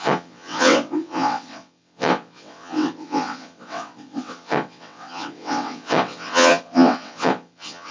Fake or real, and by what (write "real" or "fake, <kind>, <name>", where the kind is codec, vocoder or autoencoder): fake, vocoder, WaveNeXt